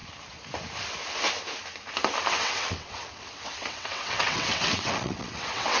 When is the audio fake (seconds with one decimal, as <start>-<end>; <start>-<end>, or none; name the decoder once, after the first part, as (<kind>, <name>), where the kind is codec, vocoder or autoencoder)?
2.3-5.8 (vocoder, WaveNeXt)